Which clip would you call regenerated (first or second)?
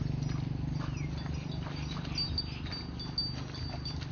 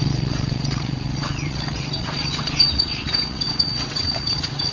second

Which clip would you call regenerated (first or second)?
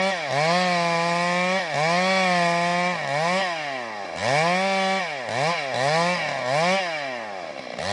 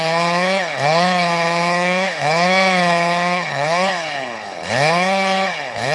second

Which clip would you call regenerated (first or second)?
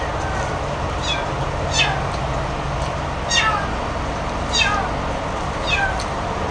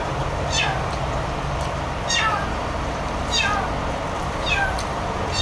second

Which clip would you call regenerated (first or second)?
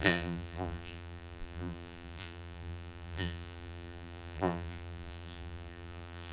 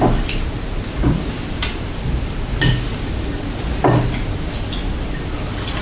first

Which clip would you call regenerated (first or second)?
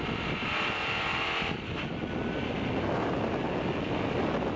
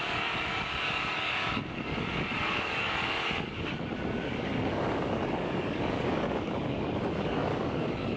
second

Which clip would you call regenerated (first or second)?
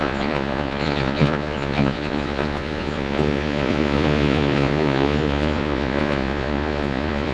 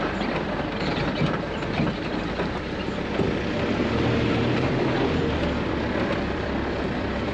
first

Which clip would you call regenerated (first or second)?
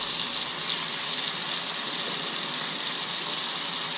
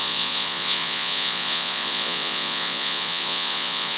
second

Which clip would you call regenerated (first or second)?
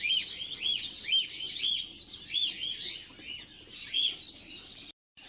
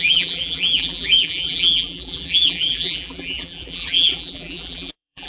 second